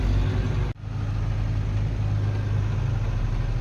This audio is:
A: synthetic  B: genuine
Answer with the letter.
B